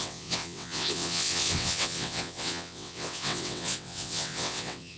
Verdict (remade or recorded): remade